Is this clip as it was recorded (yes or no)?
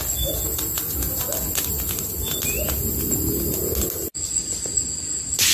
yes